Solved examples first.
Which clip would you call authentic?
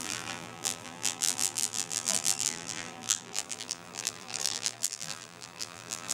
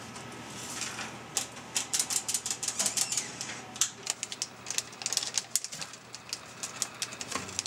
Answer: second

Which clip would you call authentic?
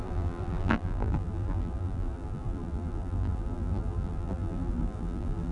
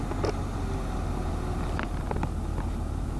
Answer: second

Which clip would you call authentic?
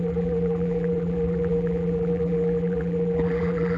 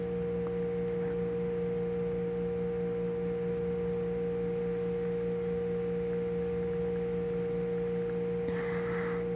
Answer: second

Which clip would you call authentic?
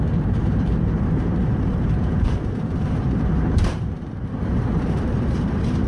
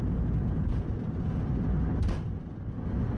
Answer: second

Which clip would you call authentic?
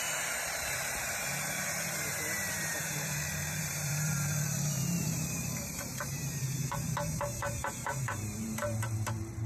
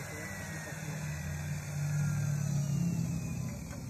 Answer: second